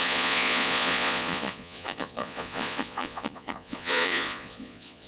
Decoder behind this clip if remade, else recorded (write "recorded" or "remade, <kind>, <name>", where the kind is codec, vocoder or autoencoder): remade, vocoder, Vocos